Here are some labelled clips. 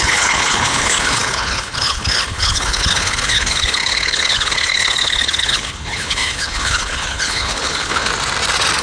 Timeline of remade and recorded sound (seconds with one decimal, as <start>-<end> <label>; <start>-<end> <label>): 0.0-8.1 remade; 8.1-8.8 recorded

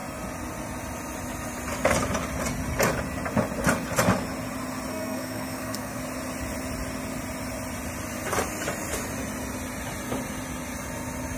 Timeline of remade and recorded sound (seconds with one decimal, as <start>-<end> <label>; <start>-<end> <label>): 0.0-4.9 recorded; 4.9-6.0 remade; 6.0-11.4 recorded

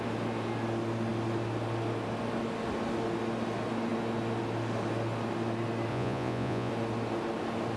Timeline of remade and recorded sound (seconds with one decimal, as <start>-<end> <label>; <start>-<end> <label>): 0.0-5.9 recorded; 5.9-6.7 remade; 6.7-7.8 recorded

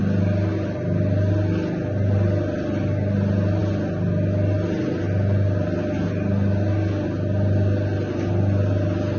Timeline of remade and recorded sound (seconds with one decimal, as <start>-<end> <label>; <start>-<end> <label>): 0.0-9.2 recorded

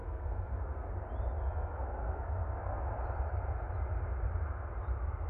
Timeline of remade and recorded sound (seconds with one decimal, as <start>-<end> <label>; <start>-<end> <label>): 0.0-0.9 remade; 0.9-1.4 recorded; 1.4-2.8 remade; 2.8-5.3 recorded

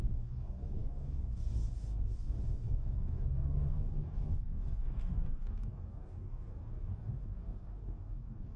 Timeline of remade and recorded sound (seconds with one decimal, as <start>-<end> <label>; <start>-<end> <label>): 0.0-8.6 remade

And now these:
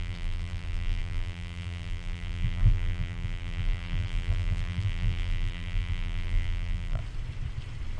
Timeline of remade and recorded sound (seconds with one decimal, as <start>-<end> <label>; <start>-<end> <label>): 0.0-7.0 remade; 7.0-8.0 recorded

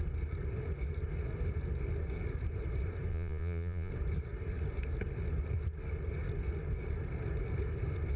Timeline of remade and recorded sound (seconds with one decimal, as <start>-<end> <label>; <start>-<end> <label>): 0.0-3.1 recorded; 3.1-3.9 remade; 3.9-8.2 recorded